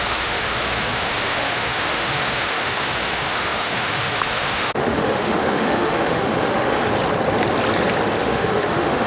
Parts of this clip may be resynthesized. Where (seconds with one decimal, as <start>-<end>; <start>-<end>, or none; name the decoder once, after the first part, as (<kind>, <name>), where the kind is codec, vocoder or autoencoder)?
0.0-6.8 (autoencoder, DAC-VAE); 8.2-9.1